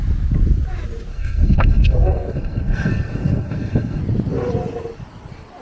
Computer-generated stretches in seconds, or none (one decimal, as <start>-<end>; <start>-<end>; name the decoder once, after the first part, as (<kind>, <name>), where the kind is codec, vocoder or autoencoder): 1.1-4.0 (codec, SNAC)